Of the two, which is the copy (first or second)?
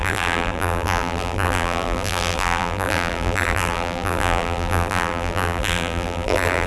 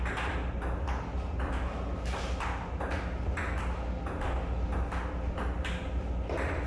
first